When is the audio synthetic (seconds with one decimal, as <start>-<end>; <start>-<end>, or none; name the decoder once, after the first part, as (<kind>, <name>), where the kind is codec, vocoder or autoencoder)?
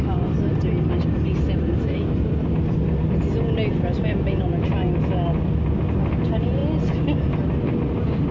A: none